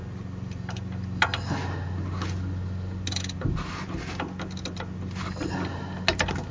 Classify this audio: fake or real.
real